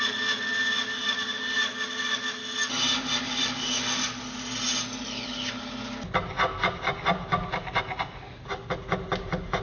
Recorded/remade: recorded